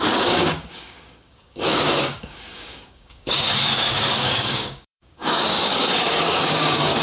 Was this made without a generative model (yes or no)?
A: no